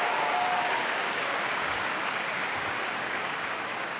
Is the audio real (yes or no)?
no